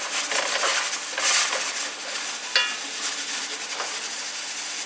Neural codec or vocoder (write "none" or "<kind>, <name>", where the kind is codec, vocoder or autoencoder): none